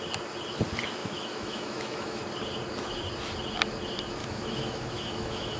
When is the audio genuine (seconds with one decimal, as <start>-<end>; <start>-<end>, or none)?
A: 0.0-1.0; 2.2-4.2